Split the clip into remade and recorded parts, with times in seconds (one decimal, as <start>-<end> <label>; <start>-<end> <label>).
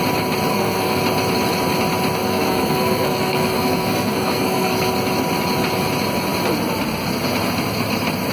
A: 0.0-0.5 recorded; 0.5-1.0 remade; 1.0-2.2 recorded; 2.2-4.9 remade; 4.9-8.3 recorded